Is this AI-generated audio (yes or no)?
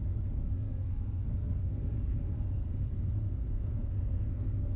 yes